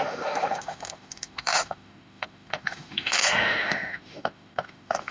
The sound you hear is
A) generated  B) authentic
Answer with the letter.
A